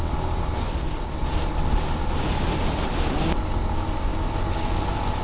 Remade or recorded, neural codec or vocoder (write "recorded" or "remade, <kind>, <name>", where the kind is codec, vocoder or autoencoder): recorded